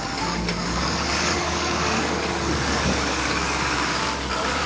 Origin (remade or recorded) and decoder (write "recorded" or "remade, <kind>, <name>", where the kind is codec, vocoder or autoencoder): remade, codec, DAC